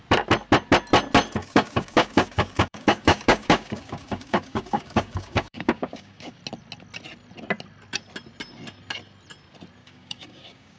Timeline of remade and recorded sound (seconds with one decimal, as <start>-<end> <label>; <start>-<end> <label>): 0.0-1.4 recorded; 1.4-6.4 remade; 6.4-9.8 recorded; 9.8-10.8 remade

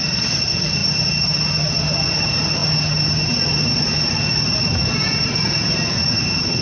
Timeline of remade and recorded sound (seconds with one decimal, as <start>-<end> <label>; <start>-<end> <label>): 0.0-6.6 recorded

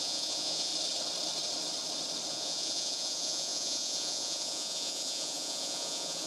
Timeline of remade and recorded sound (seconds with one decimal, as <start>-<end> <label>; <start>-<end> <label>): 0.0-0.7 remade; 0.7-2.3 recorded; 2.3-6.3 remade

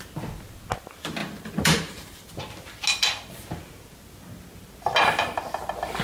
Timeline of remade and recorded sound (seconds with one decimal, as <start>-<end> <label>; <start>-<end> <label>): 0.0-1.2 recorded; 1.2-2.2 remade; 2.2-6.0 recorded

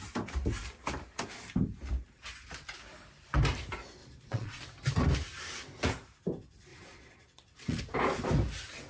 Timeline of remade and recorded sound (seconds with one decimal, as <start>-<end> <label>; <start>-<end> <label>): 0.0-4.0 recorded; 4.0-4.6 remade; 4.6-6.7 recorded; 6.7-7.8 remade; 7.8-8.9 recorded

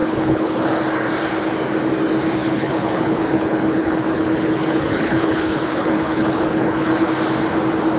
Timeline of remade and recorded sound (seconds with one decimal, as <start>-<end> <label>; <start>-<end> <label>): 0.0-0.8 remade; 0.8-2.4 recorded; 2.4-7.1 remade; 7.1-8.0 recorded